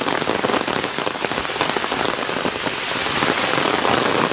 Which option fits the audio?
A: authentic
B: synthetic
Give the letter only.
A